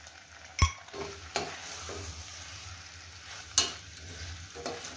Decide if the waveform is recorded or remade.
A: recorded